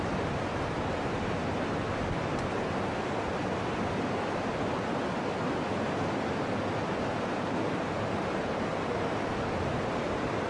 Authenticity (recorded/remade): recorded